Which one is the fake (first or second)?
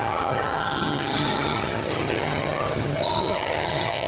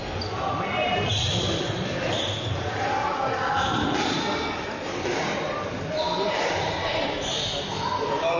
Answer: first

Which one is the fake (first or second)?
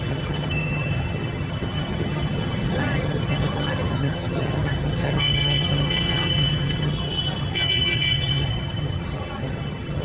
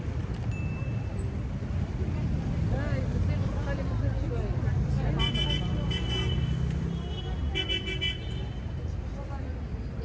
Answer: first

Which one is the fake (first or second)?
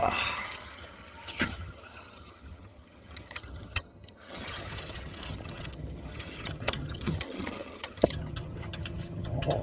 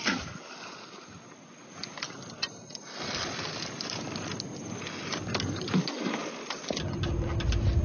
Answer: first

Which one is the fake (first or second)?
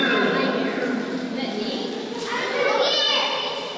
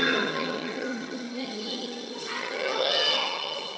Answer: second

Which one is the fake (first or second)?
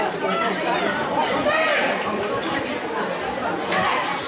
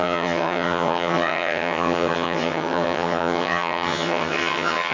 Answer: second